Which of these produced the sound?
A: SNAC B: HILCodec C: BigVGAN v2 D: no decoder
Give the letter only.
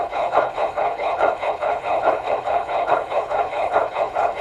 B